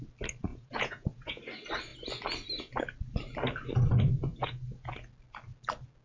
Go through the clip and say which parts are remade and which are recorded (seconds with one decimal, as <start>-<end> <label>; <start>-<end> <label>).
0.0-0.5 recorded; 0.5-1.4 remade; 1.4-4.3 recorded; 4.3-4.9 remade; 4.9-6.0 recorded